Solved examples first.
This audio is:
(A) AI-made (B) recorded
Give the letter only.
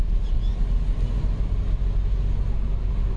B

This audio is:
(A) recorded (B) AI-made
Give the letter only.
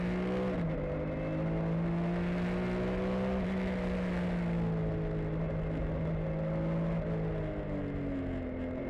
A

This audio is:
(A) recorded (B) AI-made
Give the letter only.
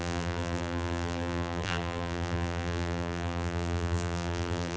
B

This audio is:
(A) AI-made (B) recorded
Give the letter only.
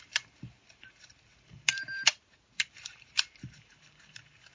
A